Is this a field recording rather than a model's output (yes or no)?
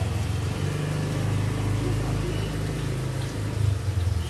yes